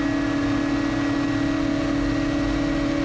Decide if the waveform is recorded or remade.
recorded